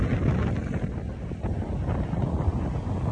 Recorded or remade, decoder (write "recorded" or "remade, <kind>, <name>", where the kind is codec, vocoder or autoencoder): recorded